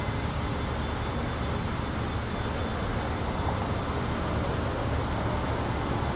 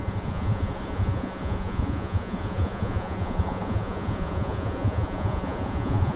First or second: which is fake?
second